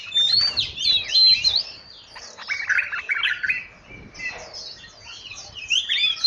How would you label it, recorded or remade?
recorded